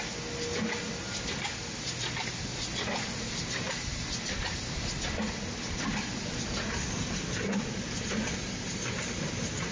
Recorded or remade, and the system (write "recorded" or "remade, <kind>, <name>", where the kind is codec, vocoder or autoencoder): recorded